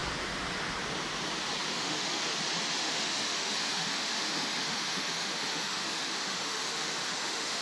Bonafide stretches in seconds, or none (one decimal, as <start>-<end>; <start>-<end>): 0.0-1.7; 2.2-2.8